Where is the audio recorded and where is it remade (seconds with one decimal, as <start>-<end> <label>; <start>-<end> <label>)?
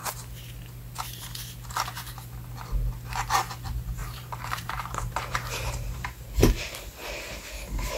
0.0-4.0 recorded; 4.0-6.9 remade; 6.9-8.0 recorded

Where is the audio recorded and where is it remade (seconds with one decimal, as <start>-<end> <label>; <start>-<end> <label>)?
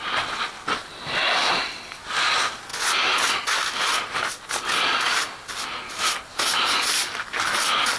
0.0-8.0 recorded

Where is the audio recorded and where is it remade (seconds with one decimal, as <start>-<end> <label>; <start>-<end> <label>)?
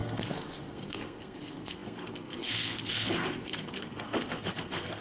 0.0-5.0 remade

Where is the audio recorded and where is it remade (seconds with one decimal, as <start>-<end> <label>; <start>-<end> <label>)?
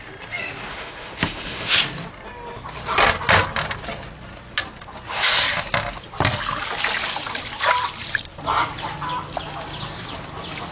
0.0-0.7 recorded; 0.7-1.8 remade; 1.8-10.7 recorded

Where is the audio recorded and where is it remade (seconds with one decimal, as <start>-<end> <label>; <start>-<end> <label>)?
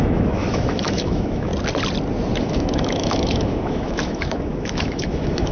0.0-1.5 remade; 1.5-2.4 recorded; 2.4-5.5 remade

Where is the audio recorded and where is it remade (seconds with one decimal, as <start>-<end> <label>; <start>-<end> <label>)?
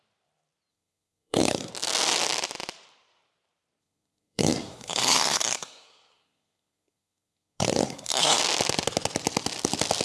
0.0-0.7 recorded; 0.7-1.7 remade; 1.7-3.8 recorded; 3.8-8.4 remade; 8.4-10.0 recorded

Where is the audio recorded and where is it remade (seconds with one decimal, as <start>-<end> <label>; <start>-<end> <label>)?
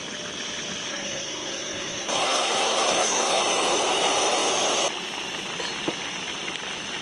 0.0-0.9 recorded; 0.9-3.4 remade; 3.4-7.0 recorded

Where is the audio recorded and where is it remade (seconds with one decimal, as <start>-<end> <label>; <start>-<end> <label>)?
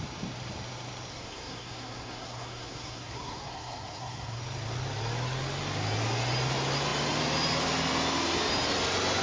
0.0-1.1 recorded; 1.1-4.4 remade; 4.4-9.2 recorded